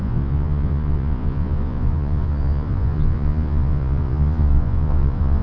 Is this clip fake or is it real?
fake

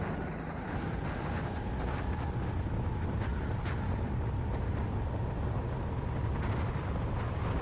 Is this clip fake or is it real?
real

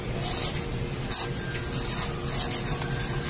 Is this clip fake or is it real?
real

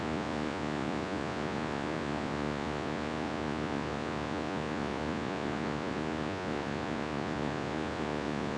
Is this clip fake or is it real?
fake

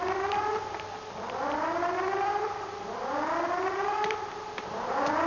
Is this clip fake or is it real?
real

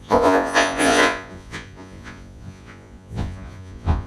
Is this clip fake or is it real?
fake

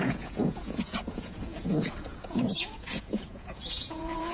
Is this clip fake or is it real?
fake